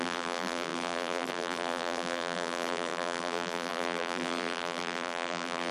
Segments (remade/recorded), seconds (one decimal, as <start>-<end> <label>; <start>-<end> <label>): 0.0-5.7 remade